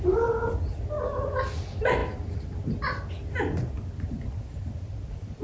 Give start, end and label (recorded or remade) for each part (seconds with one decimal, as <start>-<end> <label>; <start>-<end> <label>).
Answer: 0.0-5.4 recorded